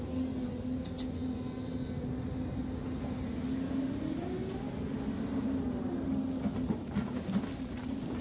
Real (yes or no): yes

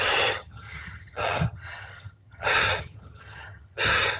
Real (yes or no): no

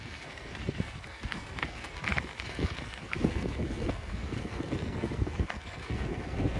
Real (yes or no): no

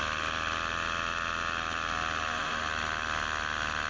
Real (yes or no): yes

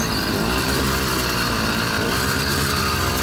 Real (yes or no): no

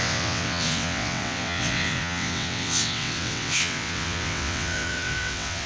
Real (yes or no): no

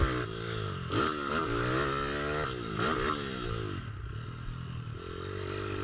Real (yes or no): yes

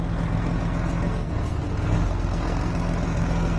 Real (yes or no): no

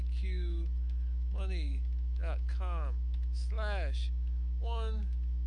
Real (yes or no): no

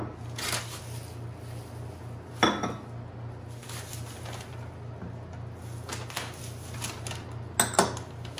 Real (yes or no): yes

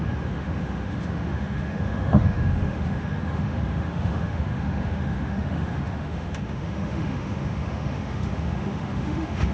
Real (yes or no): no